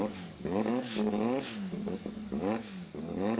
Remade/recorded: remade